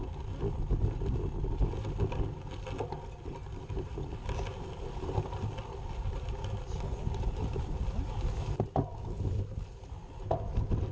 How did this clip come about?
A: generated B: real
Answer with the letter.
B